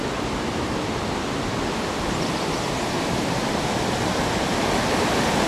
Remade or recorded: recorded